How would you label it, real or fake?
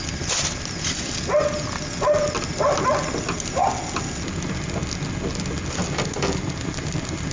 real